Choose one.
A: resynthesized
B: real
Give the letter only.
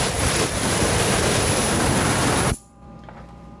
A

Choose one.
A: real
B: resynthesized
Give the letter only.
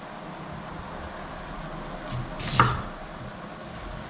A